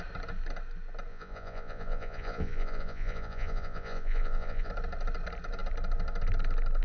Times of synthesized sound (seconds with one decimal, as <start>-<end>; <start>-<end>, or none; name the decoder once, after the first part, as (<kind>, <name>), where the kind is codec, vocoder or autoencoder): 1.1-4.7 (vocoder, Vocos)